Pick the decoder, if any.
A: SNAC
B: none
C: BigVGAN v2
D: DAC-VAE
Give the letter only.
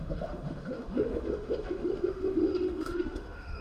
D